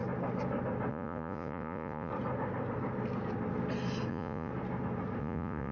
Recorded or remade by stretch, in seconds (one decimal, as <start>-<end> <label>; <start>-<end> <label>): 0.0-0.9 recorded; 0.9-2.1 remade; 2.1-4.1 recorded; 4.1-4.5 remade; 4.5-5.2 recorded; 5.2-5.7 remade

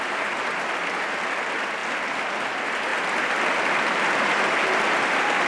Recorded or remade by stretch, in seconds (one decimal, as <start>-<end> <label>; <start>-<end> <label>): 0.0-5.5 recorded

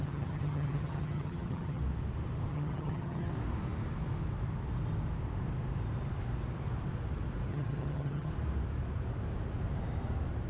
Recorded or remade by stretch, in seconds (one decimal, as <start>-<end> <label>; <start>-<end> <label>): 0.0-1.8 remade; 1.8-2.5 recorded; 2.5-3.3 remade; 3.3-7.5 recorded; 7.5-8.3 remade; 8.3-10.5 recorded

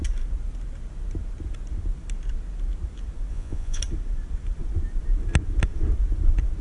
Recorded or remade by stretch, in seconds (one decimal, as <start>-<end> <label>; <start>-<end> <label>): 0.0-3.3 recorded; 3.3-3.8 remade; 3.8-6.6 recorded

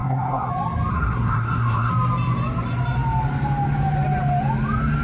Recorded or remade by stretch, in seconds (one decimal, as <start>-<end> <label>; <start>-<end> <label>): 0.0-0.5 remade; 0.5-0.9 recorded; 0.9-1.9 remade; 1.9-5.0 recorded

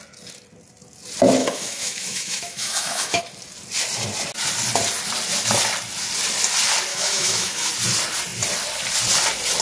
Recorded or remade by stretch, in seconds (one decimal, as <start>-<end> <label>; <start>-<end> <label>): 0.0-1.4 recorded; 1.4-3.2 remade; 3.2-6.9 recorded; 6.9-7.7 remade; 7.7-9.6 recorded